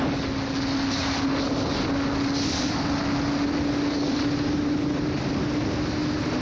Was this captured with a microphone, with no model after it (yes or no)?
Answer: yes